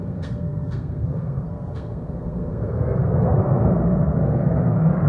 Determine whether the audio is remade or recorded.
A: remade